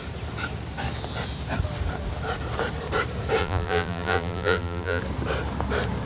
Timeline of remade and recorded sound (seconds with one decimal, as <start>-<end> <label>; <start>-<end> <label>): 0.0-3.4 recorded; 3.4-5.0 remade; 5.0-6.1 recorded